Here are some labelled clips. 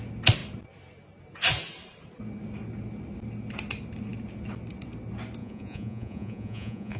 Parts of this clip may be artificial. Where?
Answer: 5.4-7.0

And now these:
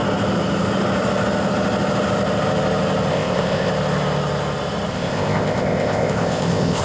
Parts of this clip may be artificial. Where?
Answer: 3.1-3.7; 4.9-6.8

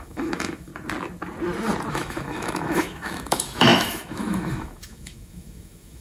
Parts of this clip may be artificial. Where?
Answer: 0.0-0.7; 1.9-6.0